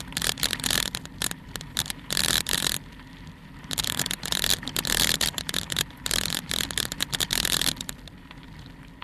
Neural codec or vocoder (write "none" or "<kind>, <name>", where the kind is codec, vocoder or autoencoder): vocoder, BigVGAN v2